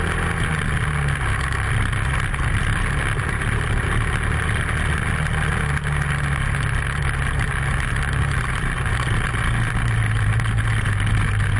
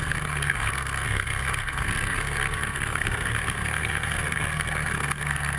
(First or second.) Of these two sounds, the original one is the first